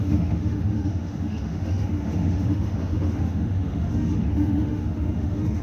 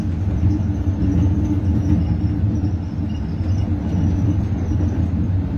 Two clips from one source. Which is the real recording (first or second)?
second